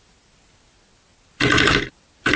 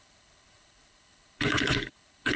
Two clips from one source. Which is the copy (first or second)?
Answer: second